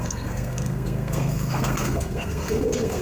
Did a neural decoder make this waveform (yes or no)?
yes